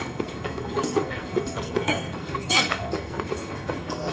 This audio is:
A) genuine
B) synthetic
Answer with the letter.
B